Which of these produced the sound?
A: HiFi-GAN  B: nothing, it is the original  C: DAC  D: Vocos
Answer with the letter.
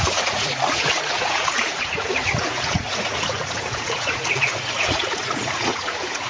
D